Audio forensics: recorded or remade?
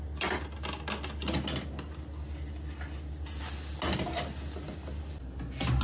recorded